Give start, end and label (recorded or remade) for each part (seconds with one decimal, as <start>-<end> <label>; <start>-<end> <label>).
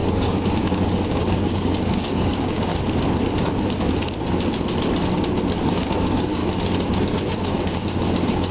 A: 0.0-2.7 remade; 2.7-5.6 recorded; 5.6-6.4 remade; 6.4-7.1 recorded; 7.1-8.5 remade